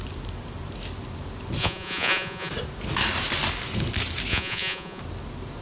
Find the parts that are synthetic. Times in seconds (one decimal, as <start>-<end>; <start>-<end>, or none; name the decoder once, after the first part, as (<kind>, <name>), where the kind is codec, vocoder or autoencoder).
1.6-2.5 (vocoder, Vocos); 4.3-5.0